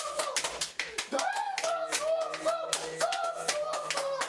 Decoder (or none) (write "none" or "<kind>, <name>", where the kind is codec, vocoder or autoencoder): none